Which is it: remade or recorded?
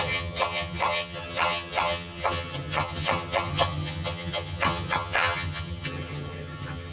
remade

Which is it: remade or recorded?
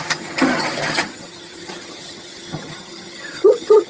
remade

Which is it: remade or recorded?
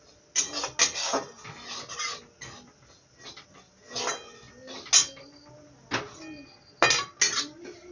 recorded